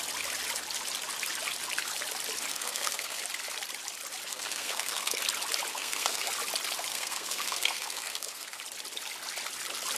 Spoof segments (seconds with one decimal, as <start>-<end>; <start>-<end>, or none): 2.5-3.2; 4.3-5.2; 5.7-6.3; 6.9-8.6